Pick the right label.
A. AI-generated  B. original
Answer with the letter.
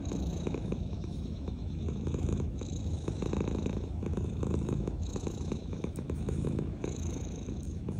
A